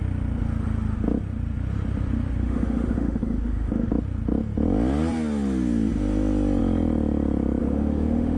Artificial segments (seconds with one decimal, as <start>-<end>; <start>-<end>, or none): 2.4-3.9; 7.6-8.4